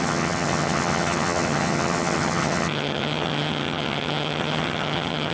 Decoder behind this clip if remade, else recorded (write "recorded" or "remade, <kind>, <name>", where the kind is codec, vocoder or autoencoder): remade, vocoder, HiFi-GAN